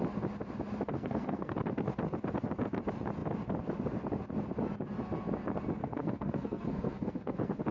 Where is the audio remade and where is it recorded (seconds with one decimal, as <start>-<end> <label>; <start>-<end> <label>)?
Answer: 0.0-0.9 recorded; 0.9-1.5 remade; 1.5-5.8 recorded; 5.8-7.7 remade